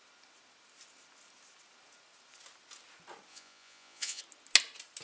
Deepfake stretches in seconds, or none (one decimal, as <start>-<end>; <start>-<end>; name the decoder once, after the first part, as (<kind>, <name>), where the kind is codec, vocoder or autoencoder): 3.3-4.2 (vocoder, Vocos)